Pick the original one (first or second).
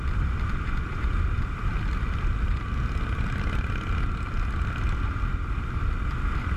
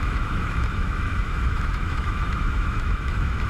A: first